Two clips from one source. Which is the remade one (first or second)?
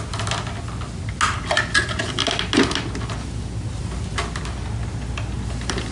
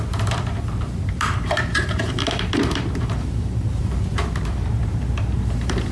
second